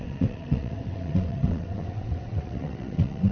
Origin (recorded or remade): remade